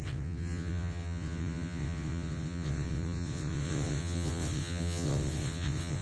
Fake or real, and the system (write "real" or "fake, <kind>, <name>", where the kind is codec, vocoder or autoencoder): fake, vocoder, WaveNeXt